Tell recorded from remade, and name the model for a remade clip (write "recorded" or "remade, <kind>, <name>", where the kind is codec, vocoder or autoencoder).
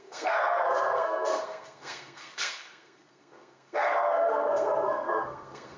remade, codec, SNAC